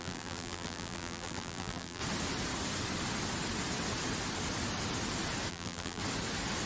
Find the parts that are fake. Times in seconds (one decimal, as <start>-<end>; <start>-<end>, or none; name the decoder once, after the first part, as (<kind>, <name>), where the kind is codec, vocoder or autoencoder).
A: 0.0-2.0 (vocoder, BigVGAN v2); 5.5-6.0